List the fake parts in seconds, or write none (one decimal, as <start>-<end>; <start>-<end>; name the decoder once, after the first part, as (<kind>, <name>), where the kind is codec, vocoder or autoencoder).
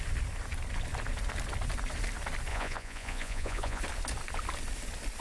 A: 2.5-3.8 (vocoder, Vocos)